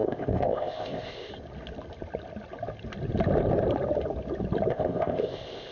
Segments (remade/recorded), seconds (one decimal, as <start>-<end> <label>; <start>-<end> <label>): 0.0-1.3 remade; 1.3-4.7 recorded; 4.7-5.7 remade